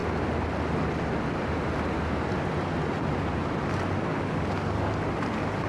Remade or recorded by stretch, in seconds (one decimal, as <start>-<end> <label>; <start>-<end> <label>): 0.0-4.1 recorded; 4.1-4.9 remade; 4.9-5.7 recorded